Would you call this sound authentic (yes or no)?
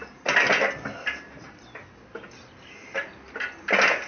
yes